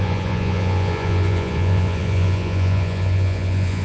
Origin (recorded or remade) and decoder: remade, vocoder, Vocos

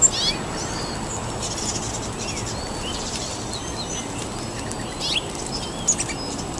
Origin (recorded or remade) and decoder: recorded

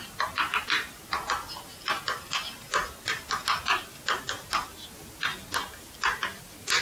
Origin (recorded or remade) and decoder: recorded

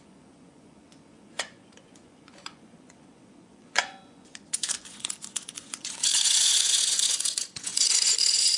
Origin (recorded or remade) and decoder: remade, vocoder, Vocos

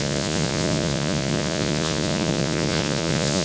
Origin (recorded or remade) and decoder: remade, vocoder, Vocos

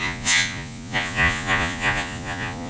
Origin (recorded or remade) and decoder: remade, vocoder, Vocos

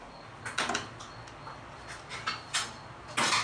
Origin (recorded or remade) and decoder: recorded